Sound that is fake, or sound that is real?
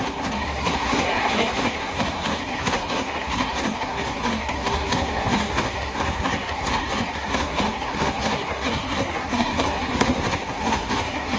fake